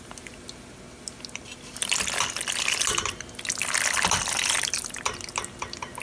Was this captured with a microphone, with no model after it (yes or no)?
yes